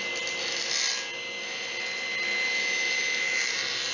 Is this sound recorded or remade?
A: recorded